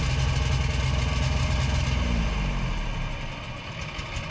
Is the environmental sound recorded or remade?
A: recorded